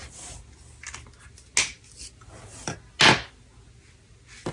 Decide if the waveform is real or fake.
real